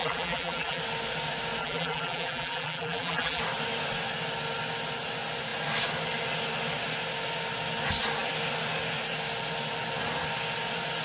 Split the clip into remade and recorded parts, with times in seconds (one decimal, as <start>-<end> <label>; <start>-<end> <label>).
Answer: 0.0-0.8 remade; 0.8-1.6 recorded; 1.6-3.4 remade; 3.4-11.0 recorded